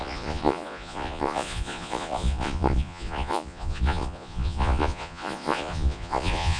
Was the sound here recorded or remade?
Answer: remade